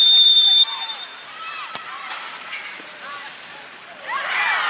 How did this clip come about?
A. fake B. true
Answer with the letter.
A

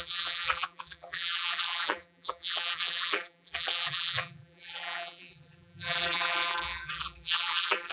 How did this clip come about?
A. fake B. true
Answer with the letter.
A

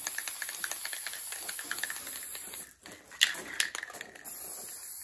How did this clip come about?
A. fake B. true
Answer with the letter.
B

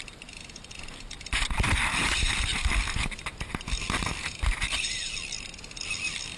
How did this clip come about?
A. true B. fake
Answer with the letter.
B